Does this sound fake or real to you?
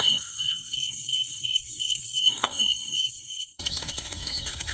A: fake